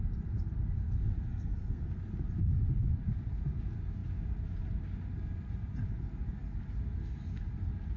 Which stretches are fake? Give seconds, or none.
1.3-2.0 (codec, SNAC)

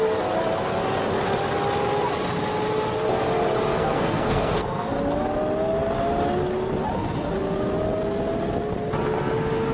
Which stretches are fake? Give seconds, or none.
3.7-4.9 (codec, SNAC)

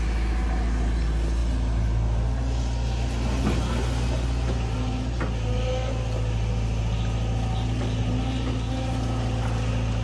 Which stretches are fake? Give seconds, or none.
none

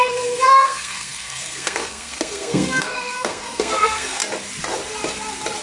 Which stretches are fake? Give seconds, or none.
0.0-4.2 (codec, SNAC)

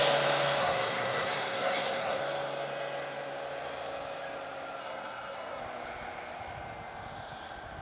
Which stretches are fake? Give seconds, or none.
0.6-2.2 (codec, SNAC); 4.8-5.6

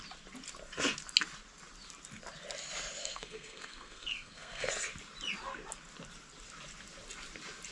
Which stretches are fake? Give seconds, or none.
3.0-4.7 (codec, SNAC)

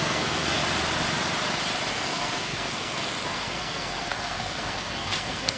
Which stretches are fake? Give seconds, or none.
0.0-0.6 (codec, SNAC); 1.9-5.6

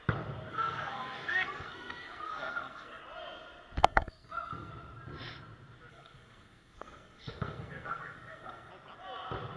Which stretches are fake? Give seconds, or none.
0.5-3.0 (codec, SNAC); 3.8-4.7; 5.9-8.7